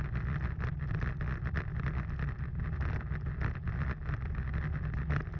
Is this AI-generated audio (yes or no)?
no